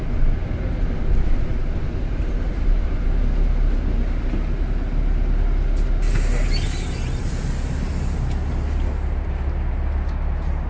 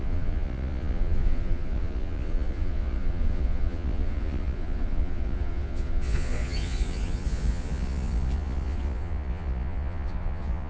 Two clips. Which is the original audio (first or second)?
first